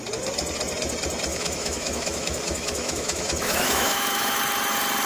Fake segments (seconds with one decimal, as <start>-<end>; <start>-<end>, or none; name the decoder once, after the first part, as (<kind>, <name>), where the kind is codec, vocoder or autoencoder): 1.3-4.4 (autoencoder, DAC-VAE)